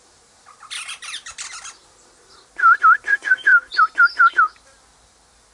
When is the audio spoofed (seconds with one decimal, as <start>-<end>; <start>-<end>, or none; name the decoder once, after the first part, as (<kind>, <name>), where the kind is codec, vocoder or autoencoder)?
1.8-2.8 (vocoder, BigVGAN v2)